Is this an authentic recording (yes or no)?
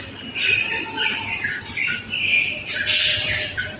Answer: yes